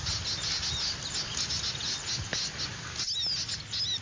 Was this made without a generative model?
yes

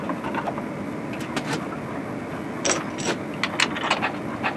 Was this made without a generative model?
yes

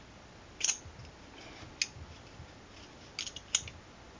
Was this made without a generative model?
yes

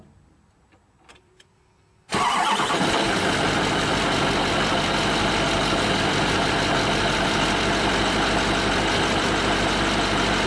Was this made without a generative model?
yes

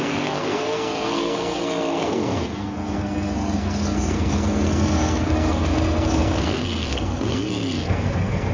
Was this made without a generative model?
no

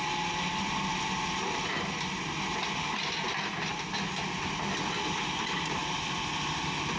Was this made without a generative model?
yes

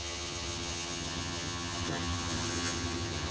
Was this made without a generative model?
no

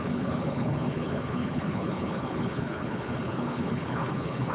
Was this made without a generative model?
no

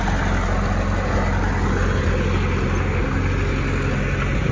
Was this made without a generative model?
yes